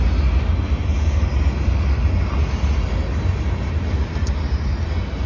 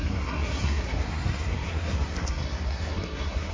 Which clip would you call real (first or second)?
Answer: first